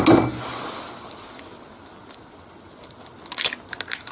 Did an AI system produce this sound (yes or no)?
no